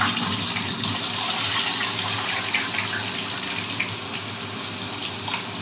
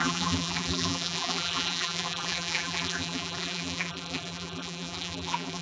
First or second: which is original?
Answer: first